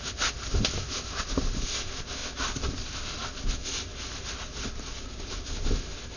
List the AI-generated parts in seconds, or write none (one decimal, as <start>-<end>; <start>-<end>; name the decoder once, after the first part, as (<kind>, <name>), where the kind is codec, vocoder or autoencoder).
none